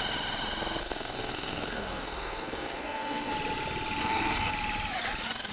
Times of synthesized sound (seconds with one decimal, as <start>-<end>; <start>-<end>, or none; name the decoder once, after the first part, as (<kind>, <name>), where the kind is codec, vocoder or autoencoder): 0.8-3.3 (codec, SNAC); 4.0-4.5